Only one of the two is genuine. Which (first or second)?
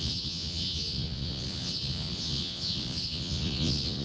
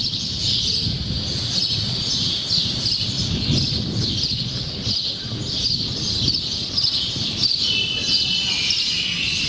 second